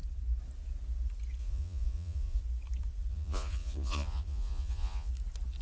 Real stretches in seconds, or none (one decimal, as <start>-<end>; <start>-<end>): 0.0-1.4; 2.4-3.1; 5.1-5.6